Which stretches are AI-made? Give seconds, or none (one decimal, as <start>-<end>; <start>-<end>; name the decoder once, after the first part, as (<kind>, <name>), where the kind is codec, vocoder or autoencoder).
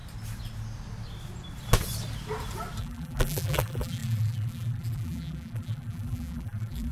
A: 2.8-6.9 (vocoder, BigVGAN v2)